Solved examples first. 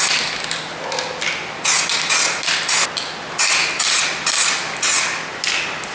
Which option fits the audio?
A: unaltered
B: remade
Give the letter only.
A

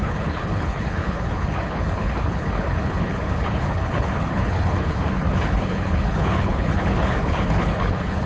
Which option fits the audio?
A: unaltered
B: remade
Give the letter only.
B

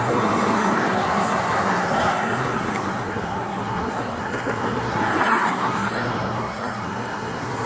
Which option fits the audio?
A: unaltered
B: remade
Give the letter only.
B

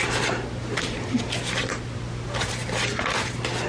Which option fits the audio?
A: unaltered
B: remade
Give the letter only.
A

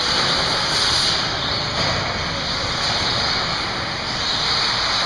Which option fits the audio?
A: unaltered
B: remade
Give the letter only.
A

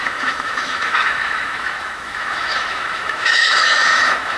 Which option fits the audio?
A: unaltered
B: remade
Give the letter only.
B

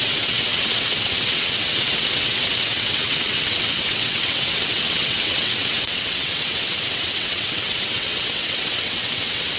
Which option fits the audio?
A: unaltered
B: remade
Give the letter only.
B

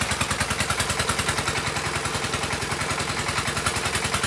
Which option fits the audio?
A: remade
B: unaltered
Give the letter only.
B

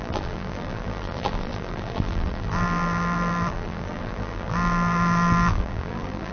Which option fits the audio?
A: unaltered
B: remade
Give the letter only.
B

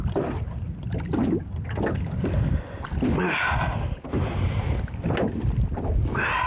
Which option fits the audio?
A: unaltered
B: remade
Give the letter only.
A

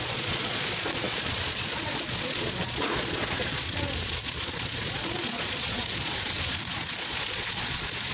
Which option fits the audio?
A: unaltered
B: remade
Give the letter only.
B